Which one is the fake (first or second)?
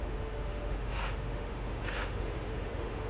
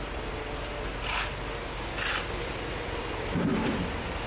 first